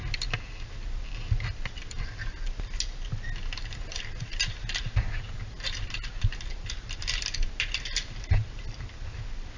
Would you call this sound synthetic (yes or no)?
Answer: no